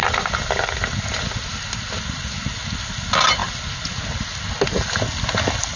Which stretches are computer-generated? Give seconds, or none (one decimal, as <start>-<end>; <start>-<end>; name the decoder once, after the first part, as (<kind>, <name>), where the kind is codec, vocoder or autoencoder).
none